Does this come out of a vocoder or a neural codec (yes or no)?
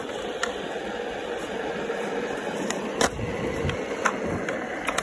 no